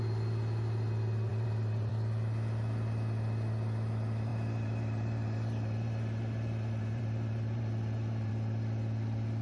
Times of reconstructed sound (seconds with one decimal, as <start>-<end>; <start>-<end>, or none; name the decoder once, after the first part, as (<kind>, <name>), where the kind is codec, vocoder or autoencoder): 1.3-1.9 (vocoder, BigVGAN v2); 4.3-8.3